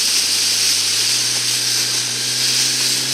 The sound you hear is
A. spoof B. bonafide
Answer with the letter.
B